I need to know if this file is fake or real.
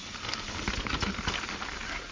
real